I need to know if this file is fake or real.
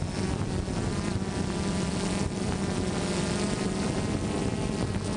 real